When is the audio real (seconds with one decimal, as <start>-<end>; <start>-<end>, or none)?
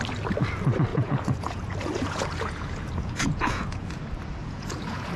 0.0-0.9; 4.0-4.4